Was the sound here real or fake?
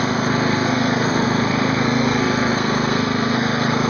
fake